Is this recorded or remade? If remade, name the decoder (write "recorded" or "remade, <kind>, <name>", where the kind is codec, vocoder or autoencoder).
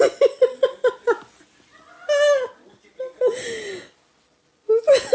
recorded